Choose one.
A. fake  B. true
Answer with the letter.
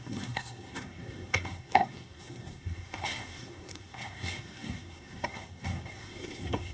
A